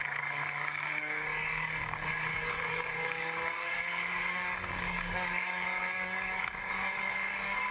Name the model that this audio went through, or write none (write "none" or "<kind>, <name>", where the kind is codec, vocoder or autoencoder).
codec, DAC